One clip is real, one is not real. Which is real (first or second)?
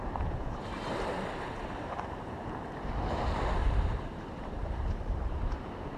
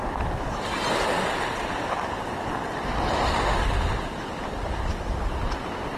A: second